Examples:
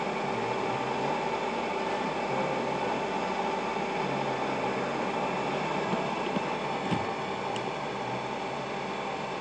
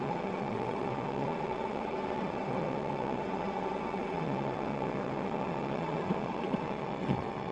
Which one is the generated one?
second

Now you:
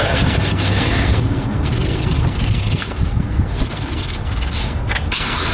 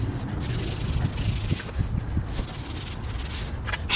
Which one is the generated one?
first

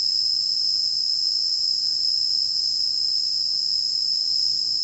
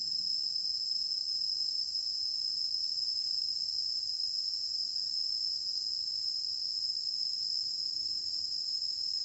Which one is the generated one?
first